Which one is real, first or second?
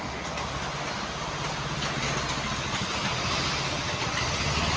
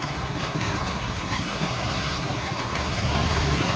first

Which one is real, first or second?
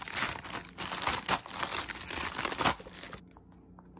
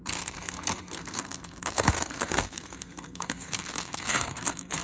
first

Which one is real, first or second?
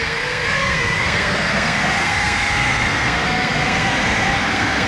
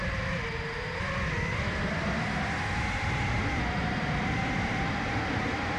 second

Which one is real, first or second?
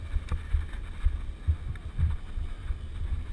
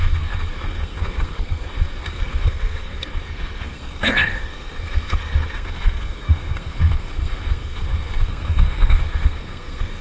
first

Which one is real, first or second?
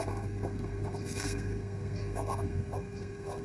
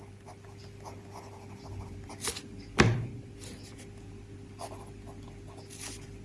second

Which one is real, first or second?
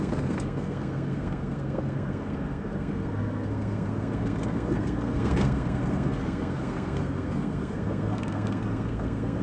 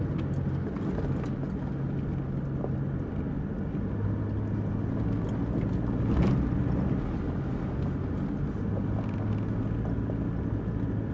second